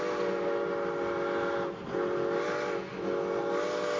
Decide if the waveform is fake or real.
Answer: real